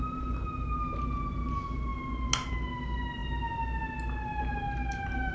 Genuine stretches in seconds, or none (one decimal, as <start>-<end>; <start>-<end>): 0.0-5.3

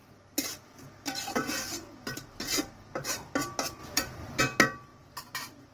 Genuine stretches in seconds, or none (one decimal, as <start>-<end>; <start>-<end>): 3.3-3.8; 4.4-4.9

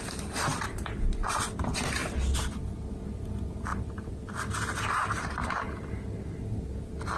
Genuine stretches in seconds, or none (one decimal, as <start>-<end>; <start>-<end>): 0.0-7.2

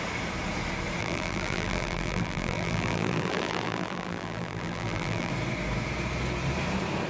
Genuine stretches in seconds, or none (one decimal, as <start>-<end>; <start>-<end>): 0.0-1.0; 5.3-7.1

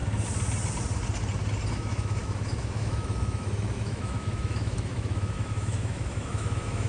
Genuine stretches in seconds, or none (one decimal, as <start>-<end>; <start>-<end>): 0.0-1.7

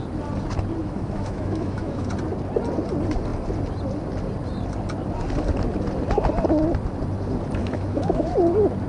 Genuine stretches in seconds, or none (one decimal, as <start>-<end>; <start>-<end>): 0.0-0.8; 2.1-7.6; 8.3-8.9

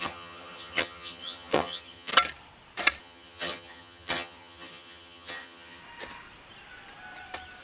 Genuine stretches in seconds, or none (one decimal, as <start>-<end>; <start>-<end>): 2.1-3.0; 5.8-7.6

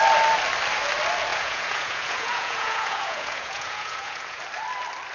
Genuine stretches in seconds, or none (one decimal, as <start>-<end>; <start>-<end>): 0.0-1.3; 4.4-5.1